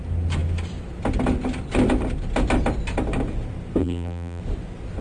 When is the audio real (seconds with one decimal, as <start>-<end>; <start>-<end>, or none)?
0.0-3.8; 4.4-5.0